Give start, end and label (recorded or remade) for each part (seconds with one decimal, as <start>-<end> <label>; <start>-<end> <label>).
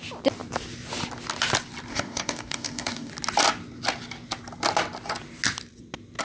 0.0-1.9 recorded; 1.9-3.1 remade; 3.1-6.2 recorded